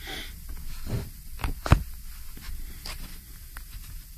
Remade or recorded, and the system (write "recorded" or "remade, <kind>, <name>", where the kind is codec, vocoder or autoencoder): recorded